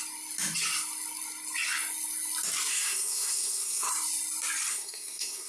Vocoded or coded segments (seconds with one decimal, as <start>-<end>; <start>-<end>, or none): 2.7-3.9; 4.7-5.5